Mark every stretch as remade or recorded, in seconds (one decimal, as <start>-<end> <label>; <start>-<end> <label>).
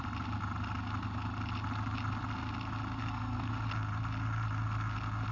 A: 0.0-3.0 recorded; 3.0-3.5 remade; 3.5-5.3 recorded